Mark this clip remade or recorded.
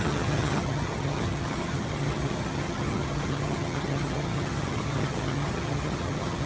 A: remade